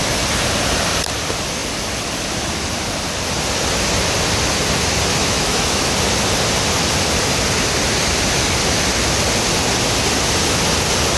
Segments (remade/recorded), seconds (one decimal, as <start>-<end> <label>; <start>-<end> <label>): 0.0-5.2 recorded; 5.2-5.9 remade; 5.9-11.2 recorded